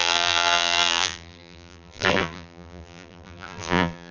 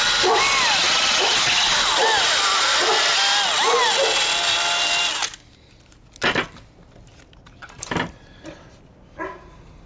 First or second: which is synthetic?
first